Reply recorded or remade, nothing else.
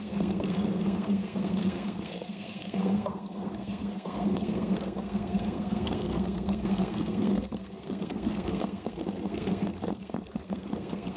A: remade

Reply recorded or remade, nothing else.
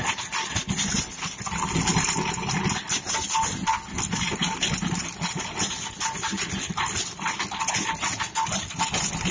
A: recorded